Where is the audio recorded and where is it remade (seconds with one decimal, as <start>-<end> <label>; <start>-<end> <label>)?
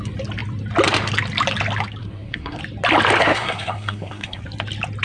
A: 0.0-2.0 recorded; 2.0-2.6 remade; 2.6-3.2 recorded; 3.2-4.4 remade; 4.4-5.0 recorded